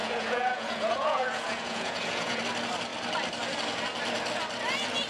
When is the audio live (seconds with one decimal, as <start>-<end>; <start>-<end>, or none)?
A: 2.4-5.1